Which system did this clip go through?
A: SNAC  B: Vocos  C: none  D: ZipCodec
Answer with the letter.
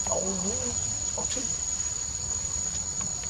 C